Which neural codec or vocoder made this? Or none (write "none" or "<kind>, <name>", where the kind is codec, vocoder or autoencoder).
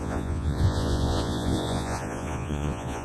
vocoder, Vocos